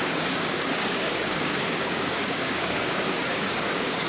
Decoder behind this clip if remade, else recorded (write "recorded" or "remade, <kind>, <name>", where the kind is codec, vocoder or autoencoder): remade, codec, DAC